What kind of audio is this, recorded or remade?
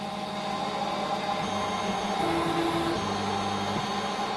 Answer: recorded